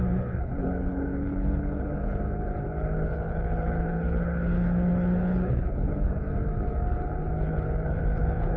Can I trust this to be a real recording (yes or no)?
no